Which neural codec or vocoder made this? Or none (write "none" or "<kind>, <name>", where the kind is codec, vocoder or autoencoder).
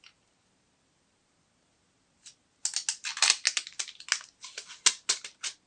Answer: none